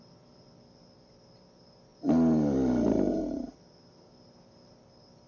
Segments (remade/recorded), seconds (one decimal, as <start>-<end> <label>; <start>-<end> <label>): 0.0-1.9 remade; 1.9-3.1 recorded; 3.1-5.3 remade